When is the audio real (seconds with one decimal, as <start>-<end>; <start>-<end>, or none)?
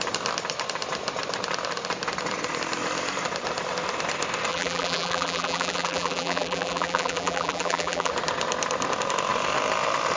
0.0-4.5; 8.1-10.2